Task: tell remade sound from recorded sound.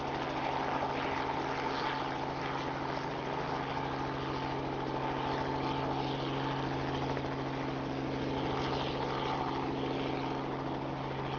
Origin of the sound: recorded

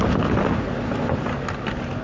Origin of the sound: recorded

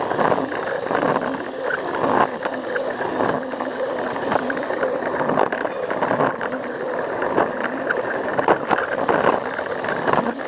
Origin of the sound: recorded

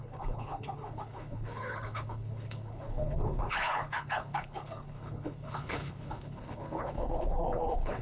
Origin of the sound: remade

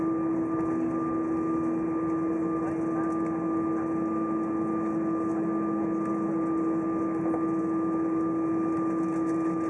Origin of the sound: recorded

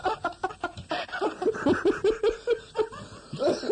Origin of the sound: recorded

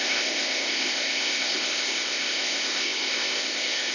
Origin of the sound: remade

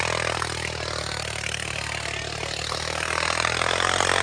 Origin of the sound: recorded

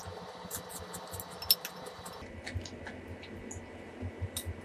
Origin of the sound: recorded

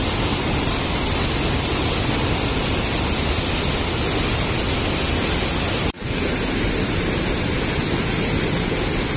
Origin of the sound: recorded